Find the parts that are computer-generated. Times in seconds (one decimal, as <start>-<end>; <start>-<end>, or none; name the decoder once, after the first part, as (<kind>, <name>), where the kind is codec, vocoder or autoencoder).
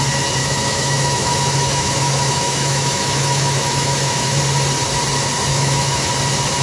0.4-4.4 (autoencoder, DAC-VAE); 5.5-6.1